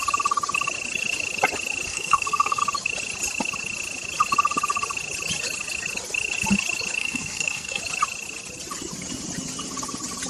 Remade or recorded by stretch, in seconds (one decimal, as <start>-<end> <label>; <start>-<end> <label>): 0.0-1.9 recorded; 1.9-2.6 remade; 2.6-7.0 recorded; 7.0-7.8 remade; 7.8-10.3 recorded